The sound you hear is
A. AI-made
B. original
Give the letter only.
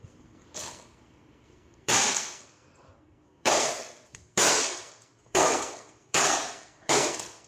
A